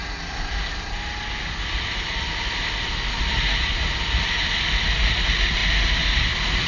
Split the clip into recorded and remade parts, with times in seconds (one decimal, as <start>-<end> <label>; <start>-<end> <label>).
0.0-6.7 recorded